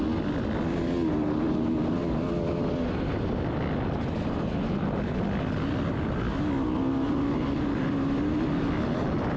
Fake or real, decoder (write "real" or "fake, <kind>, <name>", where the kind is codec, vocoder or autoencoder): real